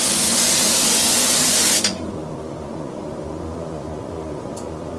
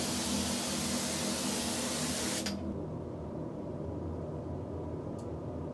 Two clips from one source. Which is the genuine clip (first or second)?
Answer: second